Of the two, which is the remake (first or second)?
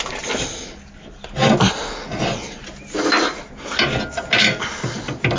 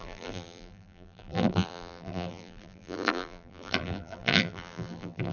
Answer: second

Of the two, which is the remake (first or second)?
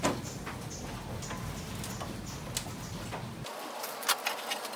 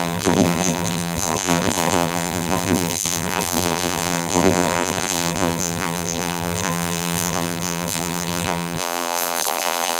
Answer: second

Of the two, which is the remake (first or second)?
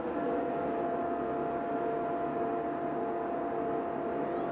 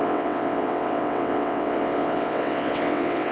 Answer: second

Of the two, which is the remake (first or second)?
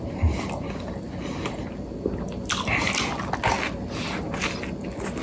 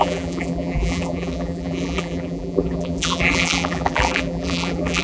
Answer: second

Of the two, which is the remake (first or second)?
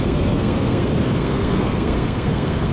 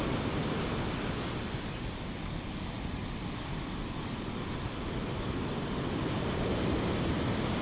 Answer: first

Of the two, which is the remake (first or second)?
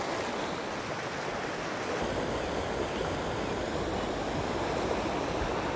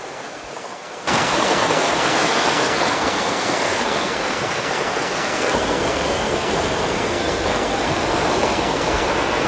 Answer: second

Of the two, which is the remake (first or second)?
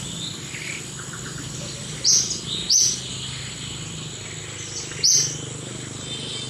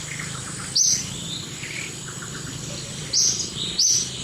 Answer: second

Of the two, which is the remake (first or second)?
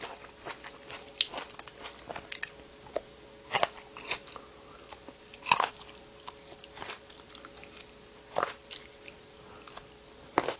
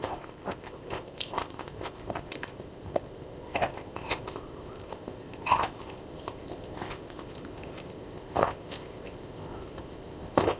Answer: second